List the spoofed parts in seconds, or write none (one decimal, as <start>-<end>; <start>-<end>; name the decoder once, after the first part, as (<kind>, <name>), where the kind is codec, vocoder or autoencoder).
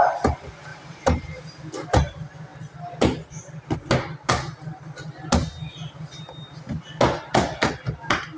0.7-1.4 (vocoder, BigVGAN v2)